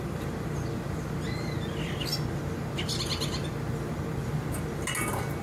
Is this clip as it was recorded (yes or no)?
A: yes